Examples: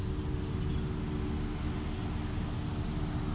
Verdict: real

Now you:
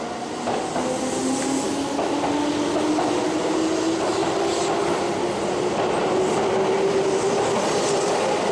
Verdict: real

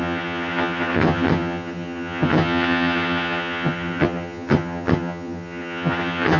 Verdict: fake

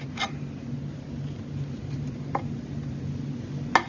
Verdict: real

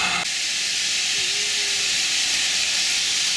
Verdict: real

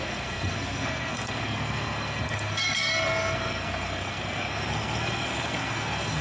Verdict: fake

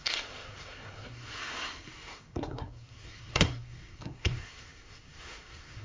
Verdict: fake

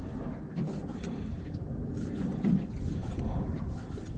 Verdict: real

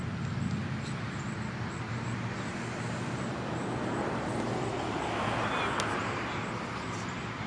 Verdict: real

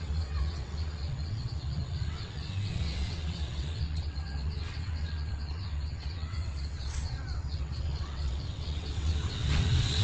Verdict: fake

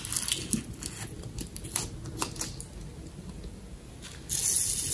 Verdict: real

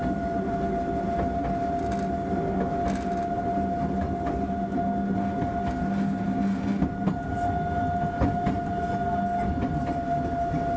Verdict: real